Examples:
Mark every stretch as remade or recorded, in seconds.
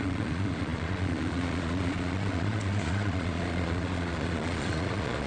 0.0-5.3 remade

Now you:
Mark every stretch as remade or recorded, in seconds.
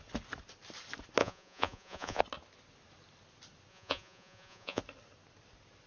0.0-1.2 recorded; 1.2-2.2 remade; 2.2-3.7 recorded; 3.7-4.8 remade; 4.8-5.9 recorded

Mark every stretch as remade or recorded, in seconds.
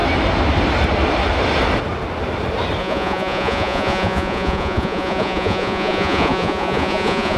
0.0-2.8 recorded; 2.8-7.4 remade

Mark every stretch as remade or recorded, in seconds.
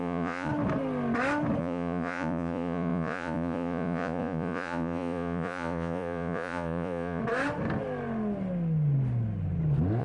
0.0-0.5 remade; 0.5-1.6 recorded; 1.6-7.2 remade; 7.2-10.0 recorded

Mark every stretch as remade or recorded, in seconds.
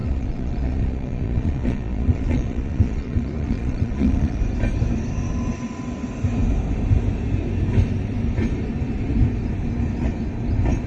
0.0-4.4 remade; 4.4-10.9 recorded